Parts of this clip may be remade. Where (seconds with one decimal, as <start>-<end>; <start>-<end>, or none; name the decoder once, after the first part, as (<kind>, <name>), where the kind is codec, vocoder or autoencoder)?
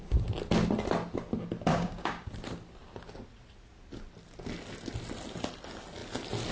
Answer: 1.7-2.3 (codec, DAC)